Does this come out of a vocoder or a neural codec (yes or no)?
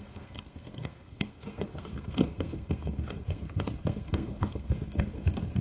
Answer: yes